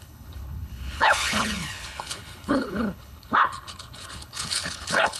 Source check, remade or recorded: remade